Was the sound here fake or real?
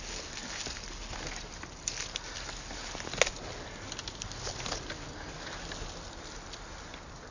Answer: real